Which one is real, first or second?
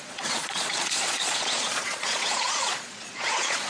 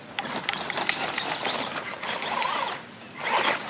second